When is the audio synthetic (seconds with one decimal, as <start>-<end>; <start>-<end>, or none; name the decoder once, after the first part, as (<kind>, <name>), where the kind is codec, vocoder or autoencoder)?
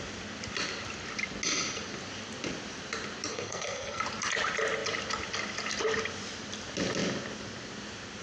3.3-4.0 (codec, SNAC)